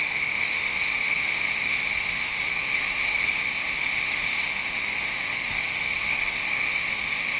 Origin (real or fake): fake